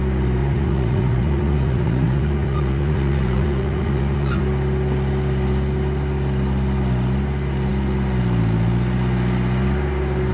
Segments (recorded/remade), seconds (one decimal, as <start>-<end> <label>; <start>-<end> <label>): 0.0-0.4 recorded; 0.4-4.4 remade; 4.4-10.3 recorded